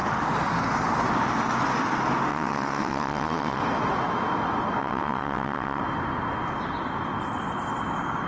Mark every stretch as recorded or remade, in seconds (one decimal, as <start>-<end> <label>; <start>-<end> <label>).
0.0-2.3 recorded; 2.3-3.6 remade; 3.6-4.8 recorded; 4.8-5.8 remade; 5.8-8.3 recorded